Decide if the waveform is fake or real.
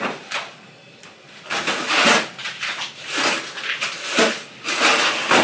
real